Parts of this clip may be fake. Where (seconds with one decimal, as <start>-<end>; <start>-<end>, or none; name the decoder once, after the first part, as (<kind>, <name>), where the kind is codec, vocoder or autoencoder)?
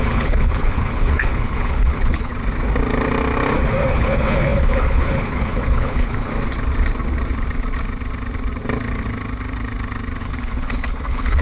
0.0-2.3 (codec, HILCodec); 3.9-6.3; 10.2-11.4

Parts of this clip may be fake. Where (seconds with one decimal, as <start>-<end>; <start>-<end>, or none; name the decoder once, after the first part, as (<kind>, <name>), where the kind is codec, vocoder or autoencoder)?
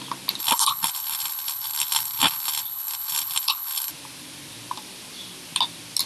0.4-3.9 (codec, HILCodec)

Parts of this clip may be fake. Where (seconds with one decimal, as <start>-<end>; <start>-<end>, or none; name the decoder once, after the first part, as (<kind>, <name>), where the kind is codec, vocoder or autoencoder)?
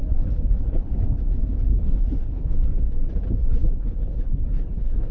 0.0-0.9 (codec, HILCodec); 1.7-2.5; 3.4-5.1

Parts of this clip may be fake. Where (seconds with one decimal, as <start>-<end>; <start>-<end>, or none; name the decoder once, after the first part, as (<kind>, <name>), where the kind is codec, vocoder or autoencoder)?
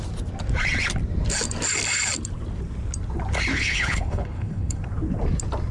3.5-4.8 (codec, HILCodec)